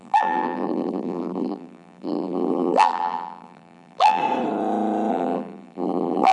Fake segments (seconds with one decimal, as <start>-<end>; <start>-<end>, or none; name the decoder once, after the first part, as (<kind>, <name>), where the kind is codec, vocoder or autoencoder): 0.0-4.2 (vocoder, BigVGAN v2); 5.1-6.3